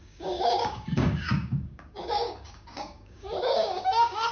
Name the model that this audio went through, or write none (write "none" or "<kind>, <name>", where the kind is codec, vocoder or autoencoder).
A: codec, DAC